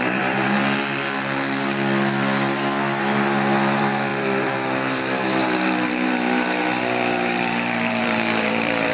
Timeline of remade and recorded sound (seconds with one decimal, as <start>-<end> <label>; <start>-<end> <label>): 0.0-0.6 remade; 0.6-3.0 recorded; 3.0-8.9 remade